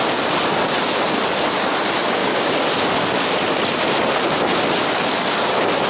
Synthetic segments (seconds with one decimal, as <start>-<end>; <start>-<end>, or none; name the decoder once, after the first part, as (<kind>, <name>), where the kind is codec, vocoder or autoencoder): 2.2-3.0 (vocoder, BigVGAN v2)